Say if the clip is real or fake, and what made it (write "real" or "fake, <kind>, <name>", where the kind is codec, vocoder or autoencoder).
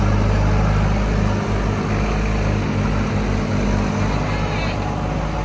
real